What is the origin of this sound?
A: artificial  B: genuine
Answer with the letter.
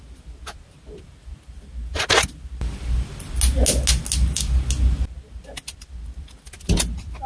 B